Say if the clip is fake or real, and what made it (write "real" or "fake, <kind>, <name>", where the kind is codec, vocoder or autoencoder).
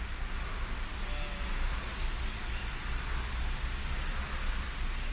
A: real